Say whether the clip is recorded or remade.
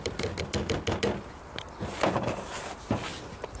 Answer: recorded